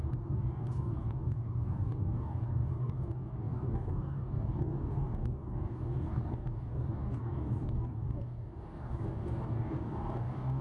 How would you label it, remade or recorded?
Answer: remade